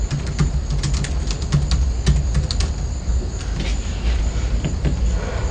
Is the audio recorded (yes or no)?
yes